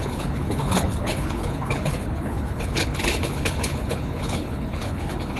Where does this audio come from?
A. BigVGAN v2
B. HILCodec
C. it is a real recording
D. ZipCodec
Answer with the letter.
B